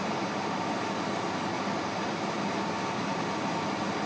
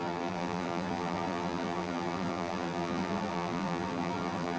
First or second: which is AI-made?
second